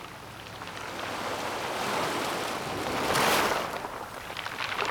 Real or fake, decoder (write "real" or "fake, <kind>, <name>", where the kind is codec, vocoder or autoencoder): fake, vocoder, BigVGAN v2